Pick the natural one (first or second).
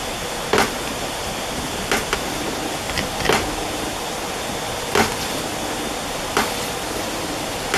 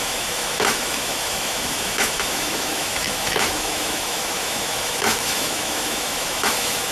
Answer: first